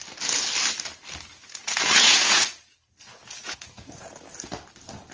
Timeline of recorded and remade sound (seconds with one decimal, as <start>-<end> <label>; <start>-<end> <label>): 0.0-1.3 recorded; 1.3-2.5 remade; 2.5-3.2 recorded; 3.2-4.1 remade; 4.1-5.1 recorded